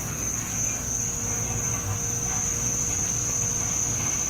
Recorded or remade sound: recorded